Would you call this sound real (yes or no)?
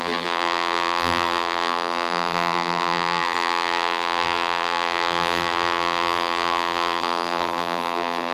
no